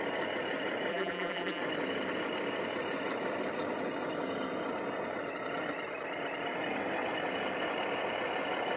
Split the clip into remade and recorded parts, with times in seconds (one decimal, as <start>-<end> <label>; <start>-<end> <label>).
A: 0.0-0.9 recorded; 0.9-1.6 remade; 1.6-8.8 recorded